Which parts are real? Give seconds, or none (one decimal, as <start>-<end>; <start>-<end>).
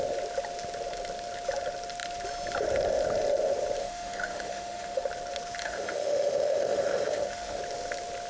0.0-3.8; 5.0-5.6; 7.6-8.3